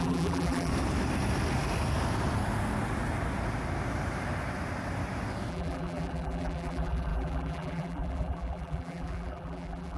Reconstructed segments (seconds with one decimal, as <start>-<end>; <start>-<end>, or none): 0.0-0.7; 5.5-10.0